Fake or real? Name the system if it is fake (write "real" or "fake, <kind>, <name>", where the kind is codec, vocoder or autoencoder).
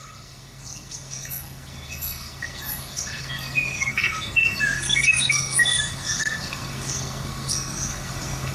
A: fake, codec, SNAC